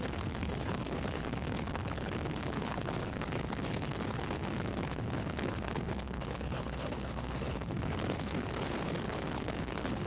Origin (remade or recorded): remade